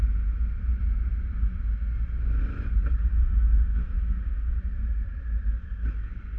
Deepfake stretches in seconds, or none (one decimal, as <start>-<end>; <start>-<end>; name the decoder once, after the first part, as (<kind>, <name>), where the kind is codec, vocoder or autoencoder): 3.1-4.5 (autoencoder, DAC-VAE)